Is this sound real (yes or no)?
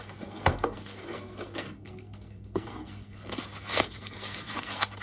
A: no